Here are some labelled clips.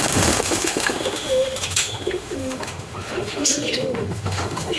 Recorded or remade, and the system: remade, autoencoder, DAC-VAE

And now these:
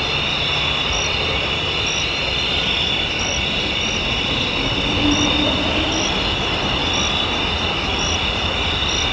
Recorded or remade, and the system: recorded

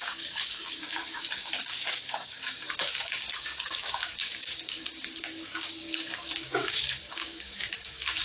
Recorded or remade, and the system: remade, codec, DAC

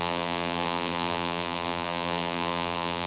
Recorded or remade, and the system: remade, vocoder, BigVGAN v2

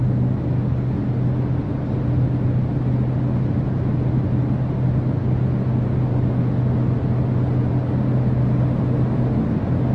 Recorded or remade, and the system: recorded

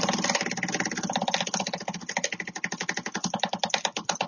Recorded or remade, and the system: recorded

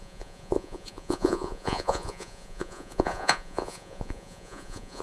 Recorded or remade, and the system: remade, vocoder, Vocos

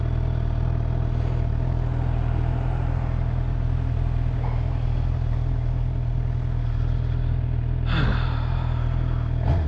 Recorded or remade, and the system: recorded